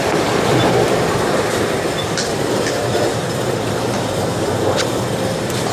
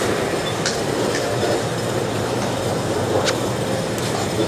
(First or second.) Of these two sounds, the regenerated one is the first